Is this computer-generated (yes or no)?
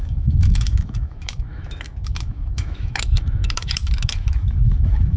yes